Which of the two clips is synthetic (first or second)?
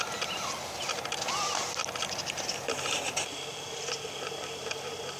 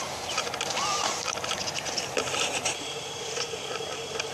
second